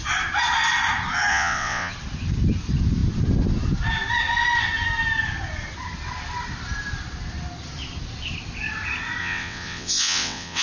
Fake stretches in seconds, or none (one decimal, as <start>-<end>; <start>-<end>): 1.3-1.9; 9.2-10.6